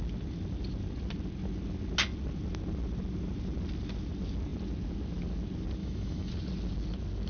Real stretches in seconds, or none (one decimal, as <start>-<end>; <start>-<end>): 0.0-5.8; 6.3-7.3